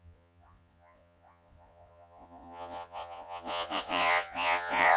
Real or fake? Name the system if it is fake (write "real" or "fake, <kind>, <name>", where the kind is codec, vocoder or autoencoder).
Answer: fake, vocoder, Vocos